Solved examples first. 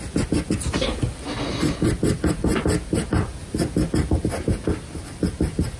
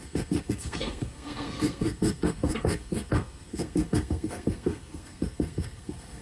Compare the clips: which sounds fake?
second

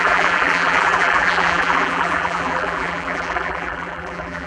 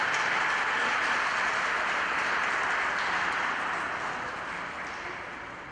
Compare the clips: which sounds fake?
first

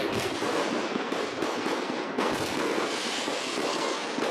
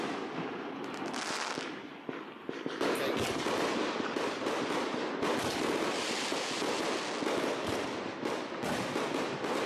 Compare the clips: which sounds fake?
first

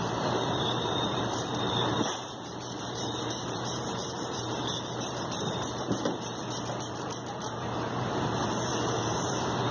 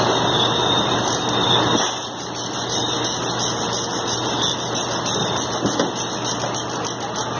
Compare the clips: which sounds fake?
first